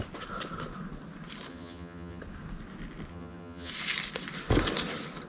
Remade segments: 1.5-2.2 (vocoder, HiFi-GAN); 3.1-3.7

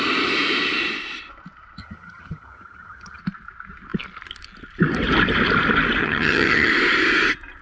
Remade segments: 1.8-3.2 (vocoder, HiFi-GAN); 6.0-6.7

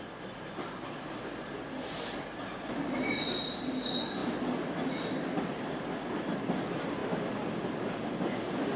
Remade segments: none

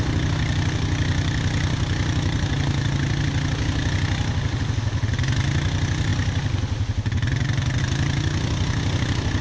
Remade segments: none

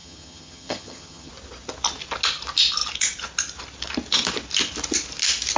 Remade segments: 0.0-1.3 (vocoder, HiFi-GAN)

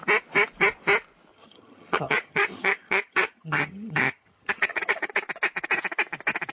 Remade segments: 1.3-5.2 (vocoder, HiFi-GAN)

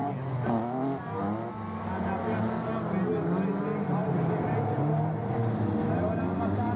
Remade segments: none